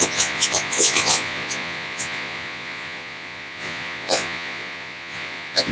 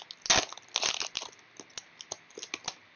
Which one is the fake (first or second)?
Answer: first